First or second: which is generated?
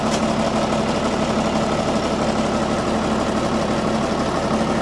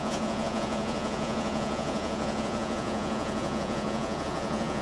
second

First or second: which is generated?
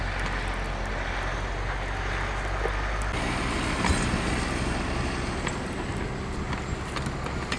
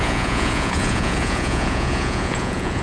second